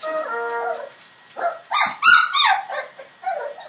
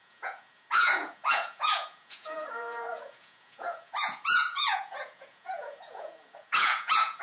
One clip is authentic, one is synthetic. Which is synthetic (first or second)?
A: second